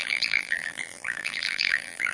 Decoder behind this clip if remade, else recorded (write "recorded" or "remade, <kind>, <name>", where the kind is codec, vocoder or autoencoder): remade, vocoder, BigVGAN v2